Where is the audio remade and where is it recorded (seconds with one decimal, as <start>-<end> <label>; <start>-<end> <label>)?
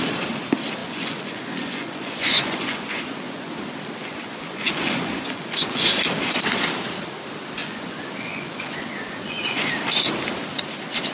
0.0-0.8 recorded; 0.8-3.5 remade; 3.5-4.0 recorded; 4.0-6.0 remade; 6.0-7.6 recorded; 7.6-9.7 remade; 9.7-11.1 recorded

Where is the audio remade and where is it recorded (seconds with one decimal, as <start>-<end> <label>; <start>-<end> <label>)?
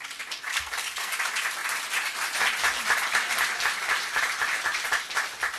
0.0-0.5 recorded; 0.5-1.1 remade; 1.1-5.6 recorded